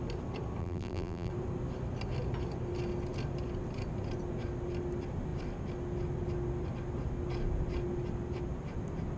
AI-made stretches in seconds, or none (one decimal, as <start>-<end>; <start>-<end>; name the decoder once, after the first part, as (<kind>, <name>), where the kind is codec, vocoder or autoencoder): 0.6-1.3 (vocoder, BigVGAN v2)